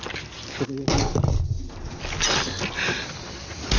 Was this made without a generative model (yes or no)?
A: yes